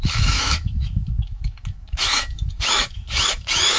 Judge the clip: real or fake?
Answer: fake